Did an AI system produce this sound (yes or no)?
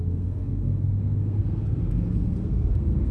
yes